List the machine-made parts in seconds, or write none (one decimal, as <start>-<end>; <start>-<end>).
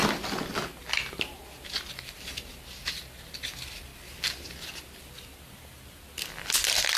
none